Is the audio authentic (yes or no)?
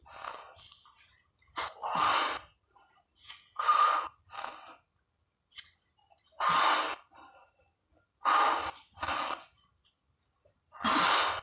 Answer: yes